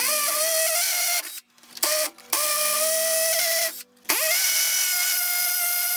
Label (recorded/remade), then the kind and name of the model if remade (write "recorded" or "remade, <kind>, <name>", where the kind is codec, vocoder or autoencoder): recorded